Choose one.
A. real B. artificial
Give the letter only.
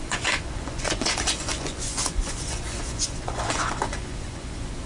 B